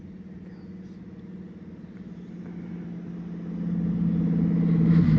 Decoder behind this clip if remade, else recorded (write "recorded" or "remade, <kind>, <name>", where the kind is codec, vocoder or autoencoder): recorded